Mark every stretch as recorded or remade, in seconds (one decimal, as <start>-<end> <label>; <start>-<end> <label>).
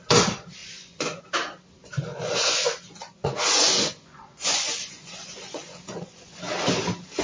0.0-0.6 recorded; 0.6-1.2 remade; 1.2-2.1 recorded; 2.1-6.4 remade; 6.4-7.2 recorded